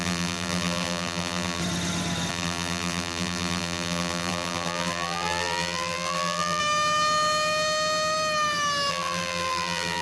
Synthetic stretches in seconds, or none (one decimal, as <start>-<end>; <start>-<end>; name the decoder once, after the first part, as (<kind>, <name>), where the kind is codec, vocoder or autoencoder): 0.0-1.6 (vocoder, BigVGAN v2); 2.3-6.6; 8.9-10.0